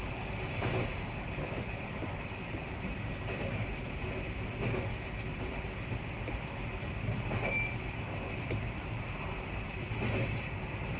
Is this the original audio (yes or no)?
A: yes